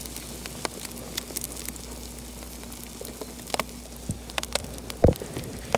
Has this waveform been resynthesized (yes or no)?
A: no